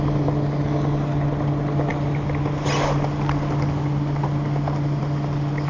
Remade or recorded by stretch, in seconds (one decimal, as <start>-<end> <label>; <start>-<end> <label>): 0.0-5.7 recorded